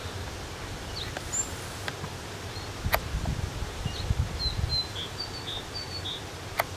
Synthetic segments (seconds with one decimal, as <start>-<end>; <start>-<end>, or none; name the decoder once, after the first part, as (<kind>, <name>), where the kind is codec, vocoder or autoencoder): 4.7-5.2 (vocoder, BigVGAN v2)